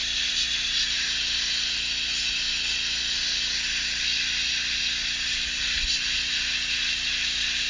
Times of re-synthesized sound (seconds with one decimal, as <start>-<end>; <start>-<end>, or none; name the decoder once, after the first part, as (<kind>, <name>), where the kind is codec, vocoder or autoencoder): none